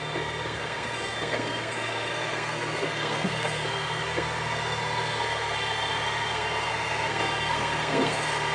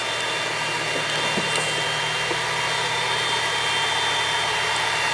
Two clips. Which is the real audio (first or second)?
second